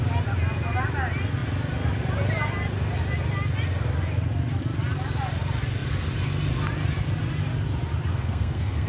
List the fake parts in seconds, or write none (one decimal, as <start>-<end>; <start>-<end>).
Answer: 8.1-8.9